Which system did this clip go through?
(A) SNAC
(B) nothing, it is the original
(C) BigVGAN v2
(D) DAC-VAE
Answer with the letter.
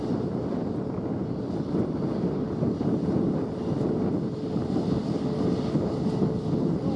B